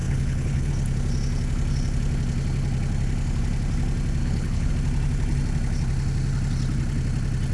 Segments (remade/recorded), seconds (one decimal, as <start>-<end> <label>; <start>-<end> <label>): 0.0-0.7 remade; 0.7-4.2 recorded; 4.2-4.7 remade; 4.7-7.5 recorded